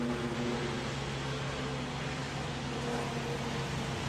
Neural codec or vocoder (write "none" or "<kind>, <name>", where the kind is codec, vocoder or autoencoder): none